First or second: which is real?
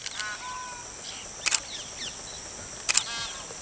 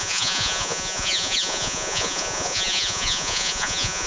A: first